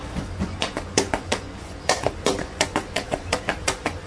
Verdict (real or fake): fake